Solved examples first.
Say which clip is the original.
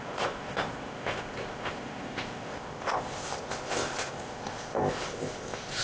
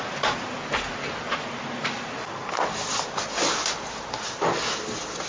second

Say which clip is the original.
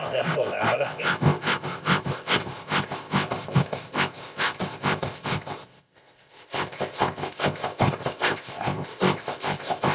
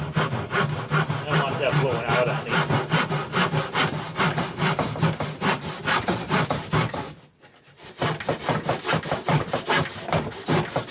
second